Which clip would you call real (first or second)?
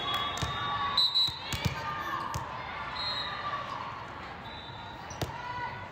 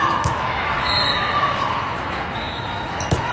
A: first